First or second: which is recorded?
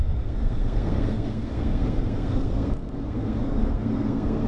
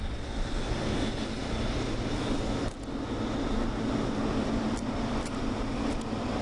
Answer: second